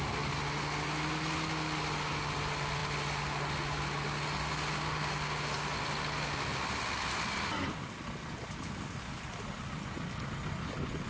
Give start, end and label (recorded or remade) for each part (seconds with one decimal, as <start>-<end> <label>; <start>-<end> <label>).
0.0-11.1 recorded